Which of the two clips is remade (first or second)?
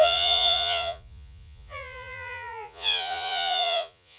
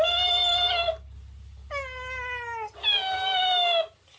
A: first